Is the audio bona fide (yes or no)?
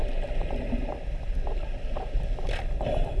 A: yes